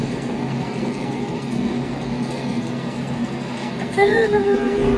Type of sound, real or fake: fake